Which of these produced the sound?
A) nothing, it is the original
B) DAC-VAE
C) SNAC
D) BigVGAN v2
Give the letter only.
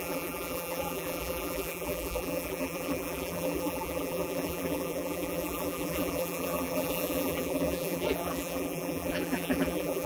D